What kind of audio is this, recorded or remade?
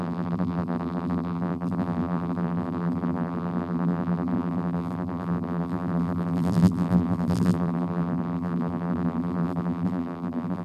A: remade